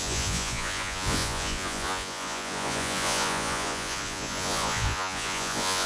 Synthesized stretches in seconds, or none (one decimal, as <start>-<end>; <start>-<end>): 0.0-5.9